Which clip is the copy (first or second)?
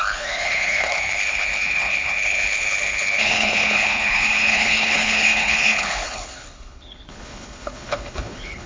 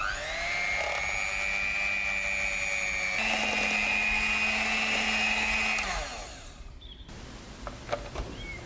first